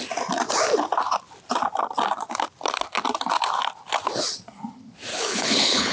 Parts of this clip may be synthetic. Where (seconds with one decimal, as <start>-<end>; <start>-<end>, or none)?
5.1-5.9